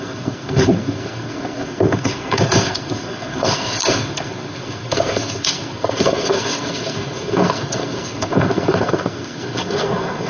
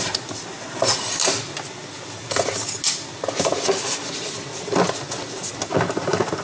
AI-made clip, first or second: first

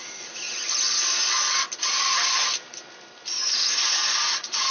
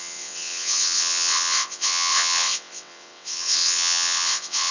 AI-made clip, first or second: second